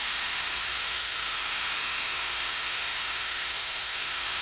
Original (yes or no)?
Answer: no